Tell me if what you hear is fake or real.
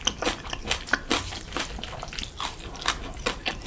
real